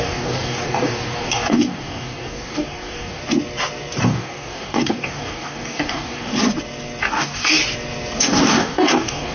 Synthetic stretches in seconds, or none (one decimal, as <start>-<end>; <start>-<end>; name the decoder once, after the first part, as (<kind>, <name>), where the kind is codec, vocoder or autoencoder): 0.0-3.2 (codec, DAC); 4.0-6.3; 7.0-7.6; 8.2-9.3